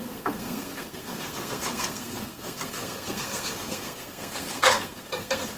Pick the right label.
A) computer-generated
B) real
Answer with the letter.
A